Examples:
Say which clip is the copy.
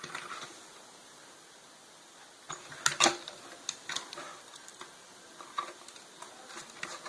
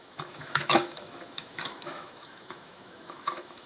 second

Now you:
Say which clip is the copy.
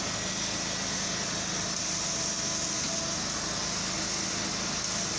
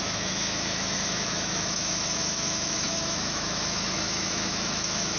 second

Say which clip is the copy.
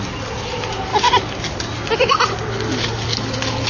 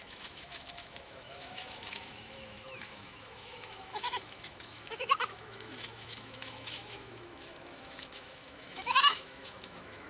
second